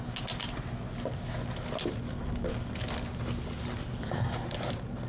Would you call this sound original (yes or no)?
yes